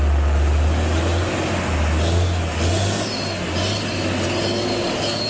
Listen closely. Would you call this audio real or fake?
real